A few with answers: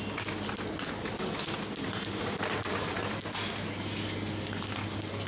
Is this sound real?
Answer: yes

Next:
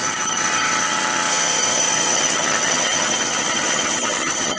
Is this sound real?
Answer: no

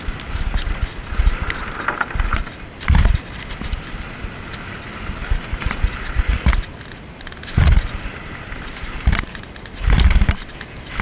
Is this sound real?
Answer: yes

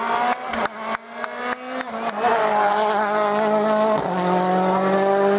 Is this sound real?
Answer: yes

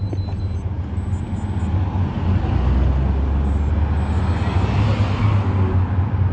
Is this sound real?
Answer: yes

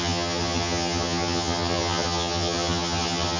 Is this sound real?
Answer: no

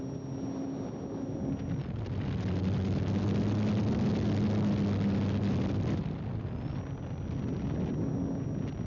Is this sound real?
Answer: yes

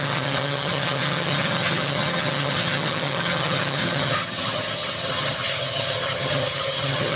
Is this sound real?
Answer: no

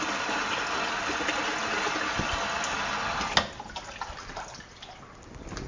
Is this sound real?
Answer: yes